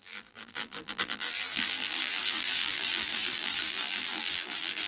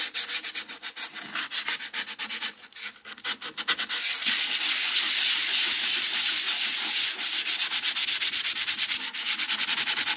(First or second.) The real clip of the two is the second